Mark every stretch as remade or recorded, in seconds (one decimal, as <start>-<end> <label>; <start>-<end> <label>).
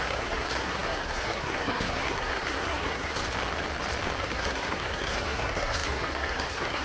0.0-3.2 remade; 3.2-4.2 recorded; 4.2-6.8 remade